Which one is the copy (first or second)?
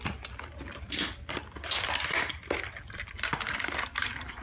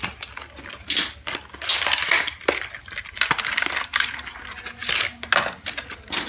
first